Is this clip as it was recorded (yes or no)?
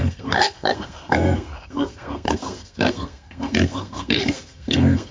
no